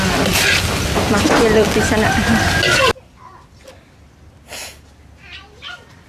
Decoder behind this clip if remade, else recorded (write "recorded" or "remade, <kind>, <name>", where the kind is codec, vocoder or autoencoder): recorded